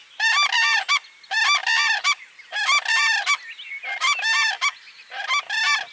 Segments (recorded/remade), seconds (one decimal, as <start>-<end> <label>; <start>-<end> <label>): 0.0-5.9 recorded